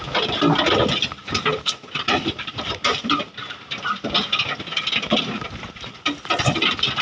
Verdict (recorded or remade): recorded